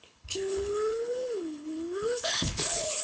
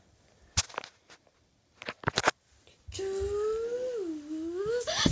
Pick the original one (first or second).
second